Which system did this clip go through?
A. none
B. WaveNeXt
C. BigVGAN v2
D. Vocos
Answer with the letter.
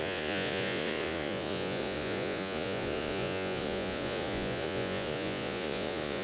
D